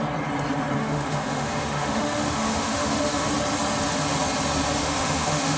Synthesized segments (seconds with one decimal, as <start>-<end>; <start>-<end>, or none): 0.8-3.3; 4.8-5.6